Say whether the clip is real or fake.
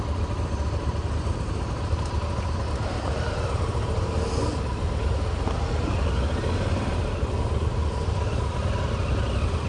real